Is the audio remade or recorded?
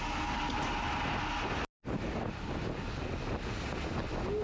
recorded